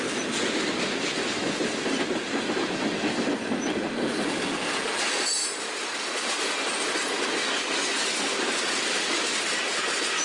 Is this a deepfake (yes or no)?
no